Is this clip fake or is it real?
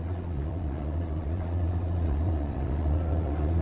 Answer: fake